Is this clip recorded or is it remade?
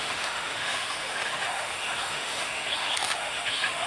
remade